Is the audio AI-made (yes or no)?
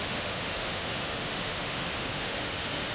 yes